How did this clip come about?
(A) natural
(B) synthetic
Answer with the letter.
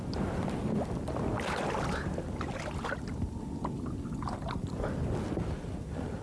A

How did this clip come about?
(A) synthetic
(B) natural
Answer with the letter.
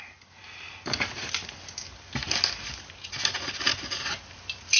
B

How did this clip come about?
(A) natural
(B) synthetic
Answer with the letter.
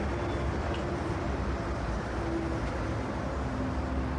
A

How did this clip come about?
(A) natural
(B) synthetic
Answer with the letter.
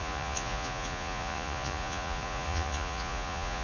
B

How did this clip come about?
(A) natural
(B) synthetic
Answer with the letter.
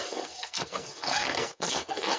B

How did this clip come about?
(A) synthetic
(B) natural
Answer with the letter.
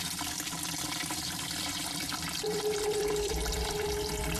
A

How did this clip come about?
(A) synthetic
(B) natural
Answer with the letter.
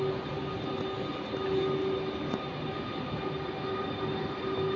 B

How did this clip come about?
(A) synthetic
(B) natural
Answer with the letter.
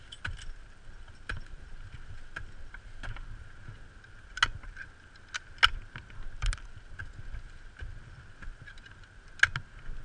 B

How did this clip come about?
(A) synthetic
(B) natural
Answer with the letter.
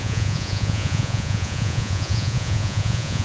A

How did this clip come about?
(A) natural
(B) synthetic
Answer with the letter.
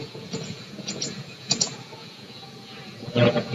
B